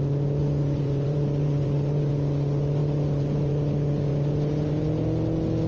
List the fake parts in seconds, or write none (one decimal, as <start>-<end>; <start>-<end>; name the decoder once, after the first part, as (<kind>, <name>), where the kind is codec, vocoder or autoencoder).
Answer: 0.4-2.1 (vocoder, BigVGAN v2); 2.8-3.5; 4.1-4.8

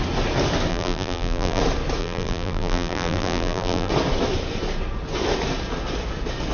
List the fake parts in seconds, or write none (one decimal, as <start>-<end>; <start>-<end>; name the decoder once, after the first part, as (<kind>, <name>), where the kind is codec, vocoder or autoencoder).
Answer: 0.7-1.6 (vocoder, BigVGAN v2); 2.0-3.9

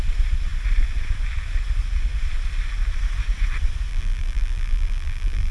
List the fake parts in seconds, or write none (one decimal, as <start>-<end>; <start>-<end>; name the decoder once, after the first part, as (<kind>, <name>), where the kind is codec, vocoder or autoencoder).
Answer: 3.9-5.5 (vocoder, BigVGAN v2)

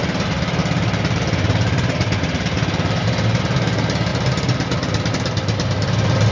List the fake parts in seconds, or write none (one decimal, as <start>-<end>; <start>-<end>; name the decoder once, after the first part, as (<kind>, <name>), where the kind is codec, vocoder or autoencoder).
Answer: 0.6-3.4 (vocoder, BigVGAN v2)

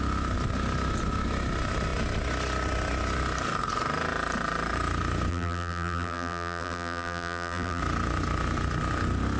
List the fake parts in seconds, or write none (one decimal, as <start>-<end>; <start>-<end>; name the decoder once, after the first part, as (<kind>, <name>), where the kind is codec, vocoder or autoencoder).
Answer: 5.3-7.8 (vocoder, BigVGAN v2)

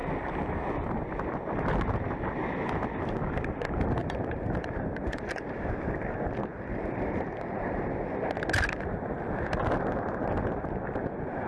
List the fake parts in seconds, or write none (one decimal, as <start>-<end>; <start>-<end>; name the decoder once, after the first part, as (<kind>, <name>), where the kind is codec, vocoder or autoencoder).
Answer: 4.0-5.8 (vocoder, BigVGAN v2); 6.5-8.0